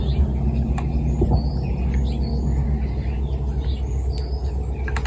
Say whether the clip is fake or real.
real